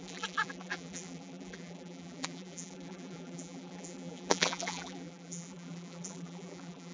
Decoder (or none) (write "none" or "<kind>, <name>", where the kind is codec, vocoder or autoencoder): vocoder, BigVGAN v2